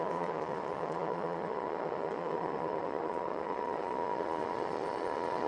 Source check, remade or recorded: remade